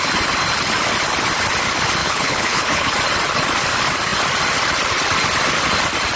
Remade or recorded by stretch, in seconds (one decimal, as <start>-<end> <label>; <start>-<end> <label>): 0.0-2.0 recorded; 2.0-2.9 remade; 2.9-6.2 recorded